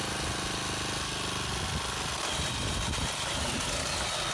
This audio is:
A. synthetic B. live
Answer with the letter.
B